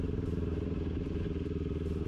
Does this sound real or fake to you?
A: real